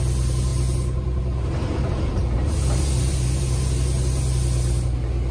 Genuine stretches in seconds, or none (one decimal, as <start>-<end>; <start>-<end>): 0.0-5.3